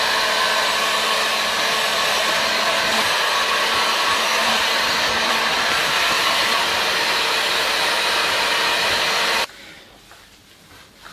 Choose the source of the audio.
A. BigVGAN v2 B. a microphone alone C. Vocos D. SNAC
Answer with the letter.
B